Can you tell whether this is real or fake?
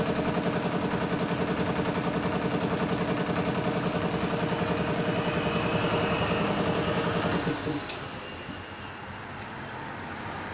real